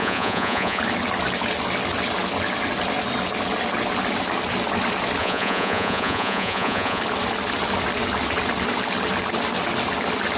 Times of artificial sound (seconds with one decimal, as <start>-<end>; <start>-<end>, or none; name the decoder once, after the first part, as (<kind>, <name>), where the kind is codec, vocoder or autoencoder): 0.0-0.8 (vocoder, Vocos); 5.2-7.0